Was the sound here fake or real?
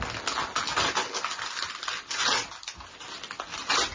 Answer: real